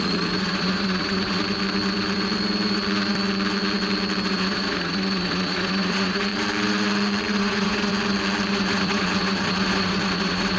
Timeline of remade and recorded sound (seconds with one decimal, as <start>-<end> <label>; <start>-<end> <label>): 0.0-1.4 remade; 1.4-4.3 recorded; 4.3-6.3 remade; 6.3-7.4 recorded; 7.4-7.9 remade; 7.9-8.5 recorded; 8.5-10.6 remade